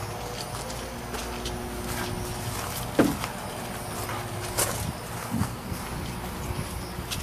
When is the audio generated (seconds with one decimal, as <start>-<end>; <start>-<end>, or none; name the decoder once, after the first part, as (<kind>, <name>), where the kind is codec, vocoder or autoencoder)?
5.2-5.8 (codec, SNAC)